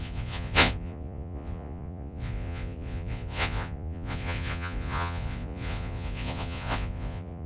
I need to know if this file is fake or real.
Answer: fake